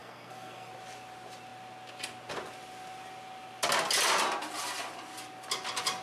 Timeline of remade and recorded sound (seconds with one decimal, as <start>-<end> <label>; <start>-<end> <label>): 0.0-0.7 remade; 0.7-6.0 recorded